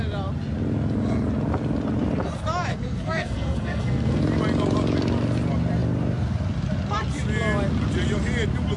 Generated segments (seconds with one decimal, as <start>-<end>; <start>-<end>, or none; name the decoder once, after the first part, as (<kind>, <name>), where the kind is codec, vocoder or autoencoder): 2.7-4.2 (codec, SNAC)